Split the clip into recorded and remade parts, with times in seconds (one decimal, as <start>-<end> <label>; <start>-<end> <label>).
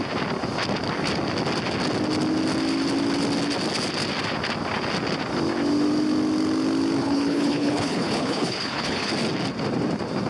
0.0-7.0 recorded; 7.0-9.1 remade; 9.1-10.3 recorded